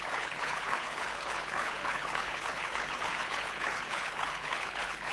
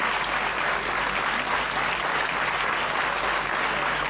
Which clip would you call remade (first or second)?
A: first